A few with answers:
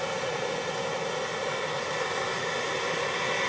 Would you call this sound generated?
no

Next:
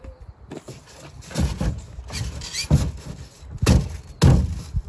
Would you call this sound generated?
no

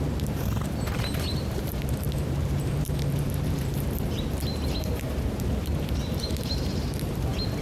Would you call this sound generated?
yes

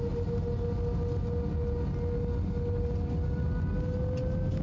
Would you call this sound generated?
no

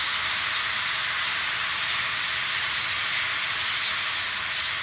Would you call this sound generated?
no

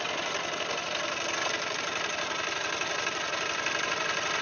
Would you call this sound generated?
no